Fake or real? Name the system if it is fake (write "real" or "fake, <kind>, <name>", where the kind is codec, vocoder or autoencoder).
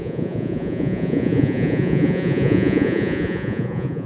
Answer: fake, vocoder, Vocos